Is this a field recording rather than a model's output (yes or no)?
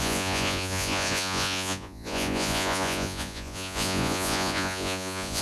no